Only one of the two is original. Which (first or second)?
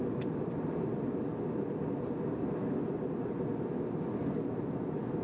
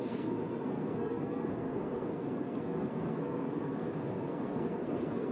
first